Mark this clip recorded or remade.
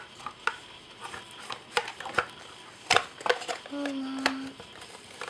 recorded